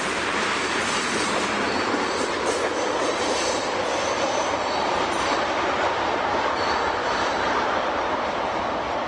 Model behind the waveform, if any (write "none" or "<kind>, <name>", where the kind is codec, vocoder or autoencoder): vocoder, BigVGAN v2